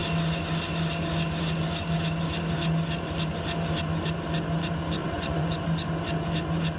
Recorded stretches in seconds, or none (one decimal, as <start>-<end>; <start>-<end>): 0.0-5.0; 5.6-6.8